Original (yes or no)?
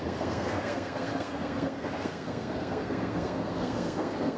no